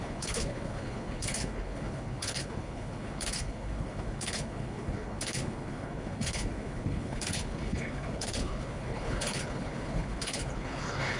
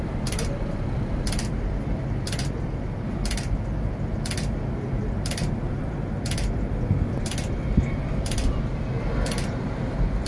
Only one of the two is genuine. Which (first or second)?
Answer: second